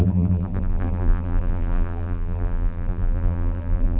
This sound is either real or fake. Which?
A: fake